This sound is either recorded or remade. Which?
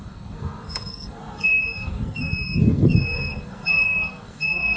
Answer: remade